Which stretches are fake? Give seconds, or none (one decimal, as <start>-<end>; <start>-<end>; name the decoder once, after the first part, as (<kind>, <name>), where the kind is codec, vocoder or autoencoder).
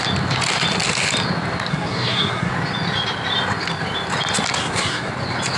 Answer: 1.7-2.5 (codec, SNAC); 4.6-5.1